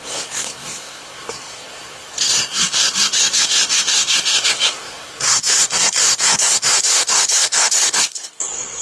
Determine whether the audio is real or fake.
fake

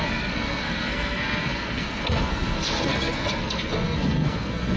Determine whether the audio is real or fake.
fake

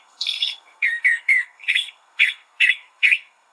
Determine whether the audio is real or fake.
fake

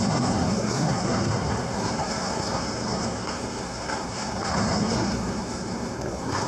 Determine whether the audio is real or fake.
fake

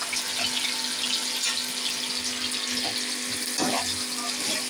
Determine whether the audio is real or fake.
real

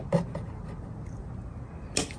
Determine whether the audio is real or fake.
real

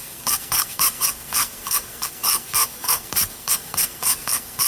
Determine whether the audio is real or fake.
fake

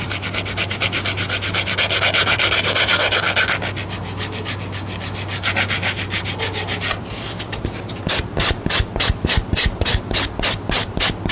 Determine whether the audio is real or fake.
real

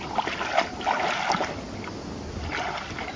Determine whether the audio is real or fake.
real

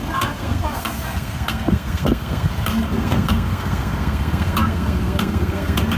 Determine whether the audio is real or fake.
fake